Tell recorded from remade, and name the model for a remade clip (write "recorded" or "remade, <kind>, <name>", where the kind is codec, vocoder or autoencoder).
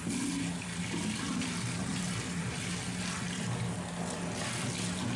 recorded